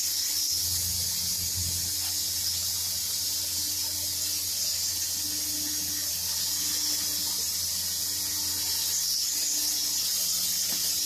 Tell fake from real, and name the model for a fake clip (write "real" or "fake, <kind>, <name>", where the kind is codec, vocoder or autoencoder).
real